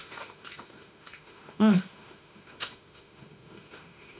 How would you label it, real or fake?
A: fake